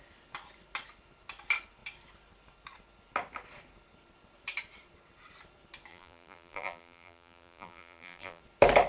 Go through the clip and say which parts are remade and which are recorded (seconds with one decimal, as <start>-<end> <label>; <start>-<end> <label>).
0.0-5.9 recorded; 5.9-8.4 remade; 8.4-8.9 recorded